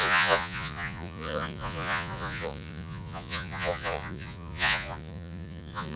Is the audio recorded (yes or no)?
no